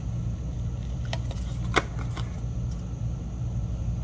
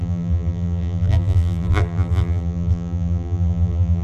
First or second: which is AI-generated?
second